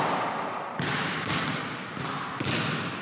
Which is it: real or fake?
real